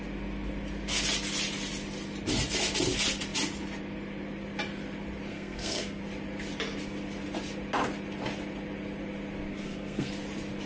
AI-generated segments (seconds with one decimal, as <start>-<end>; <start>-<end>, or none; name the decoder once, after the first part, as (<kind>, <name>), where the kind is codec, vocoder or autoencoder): 5.3-6.0 (codec, SNAC); 9.5-10.1